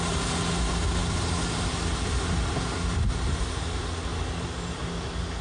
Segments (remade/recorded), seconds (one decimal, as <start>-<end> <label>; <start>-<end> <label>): 0.0-1.0 recorded; 1.0-3.6 remade; 3.6-5.4 recorded